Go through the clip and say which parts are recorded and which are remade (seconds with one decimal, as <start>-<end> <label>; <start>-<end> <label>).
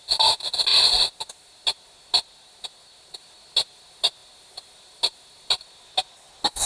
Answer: 0.0-6.7 recorded